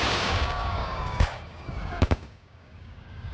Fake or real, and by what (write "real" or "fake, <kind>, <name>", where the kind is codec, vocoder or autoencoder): fake, codec, DAC